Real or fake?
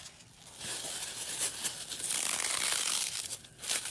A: real